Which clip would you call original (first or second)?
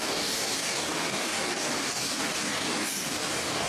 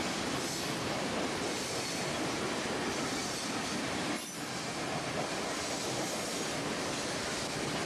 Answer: second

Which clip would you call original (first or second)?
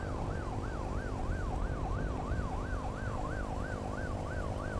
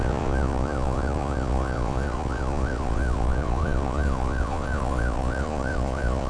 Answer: first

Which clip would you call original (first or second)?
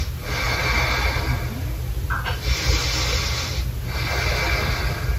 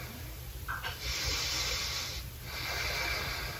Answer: first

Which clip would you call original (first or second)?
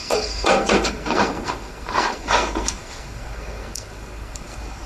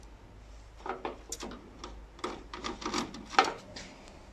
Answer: second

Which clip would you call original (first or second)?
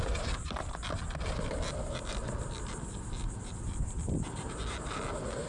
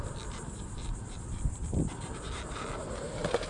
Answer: first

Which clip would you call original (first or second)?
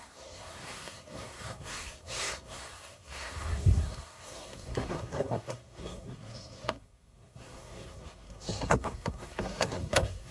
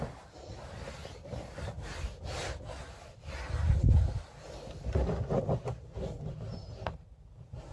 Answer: second